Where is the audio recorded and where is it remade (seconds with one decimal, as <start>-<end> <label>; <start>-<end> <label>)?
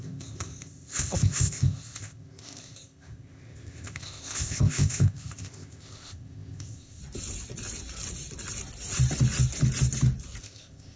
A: 0.0-7.0 remade; 7.0-10.4 recorded; 10.4-11.0 remade